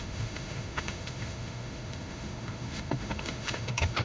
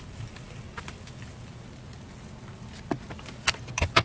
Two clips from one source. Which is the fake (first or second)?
first